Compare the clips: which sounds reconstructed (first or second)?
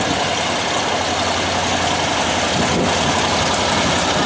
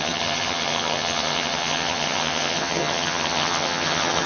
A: second